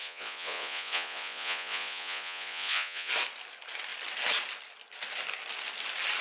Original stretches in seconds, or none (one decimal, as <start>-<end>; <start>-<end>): 3.1-6.2